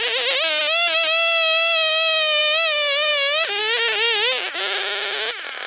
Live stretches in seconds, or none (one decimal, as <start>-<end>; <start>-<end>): 0.0-5.7